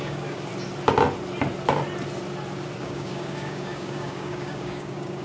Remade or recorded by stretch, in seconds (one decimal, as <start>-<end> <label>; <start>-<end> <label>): 0.0-0.5 remade; 0.5-2.8 recorded; 2.8-5.2 remade